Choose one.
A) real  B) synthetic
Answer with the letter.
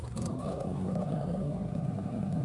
B